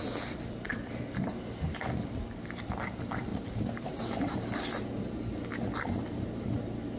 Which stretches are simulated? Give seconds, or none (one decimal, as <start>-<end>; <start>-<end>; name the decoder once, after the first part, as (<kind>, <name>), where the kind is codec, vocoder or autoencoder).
none